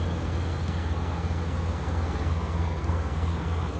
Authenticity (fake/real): fake